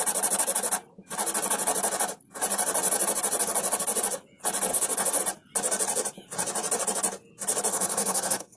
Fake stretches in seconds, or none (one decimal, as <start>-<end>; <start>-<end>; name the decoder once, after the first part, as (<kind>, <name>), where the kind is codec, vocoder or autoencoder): 4.7-5.2 (codec, SNAC); 7.7-8.6